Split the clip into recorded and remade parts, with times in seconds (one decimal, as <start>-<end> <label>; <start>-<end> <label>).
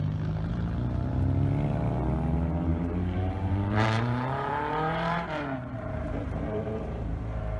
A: 0.0-2.7 recorded; 2.7-7.6 remade